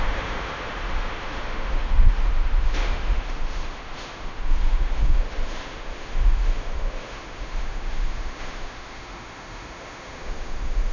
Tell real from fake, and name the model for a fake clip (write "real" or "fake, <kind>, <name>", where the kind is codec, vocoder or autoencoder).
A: fake, autoencoder, DAC-VAE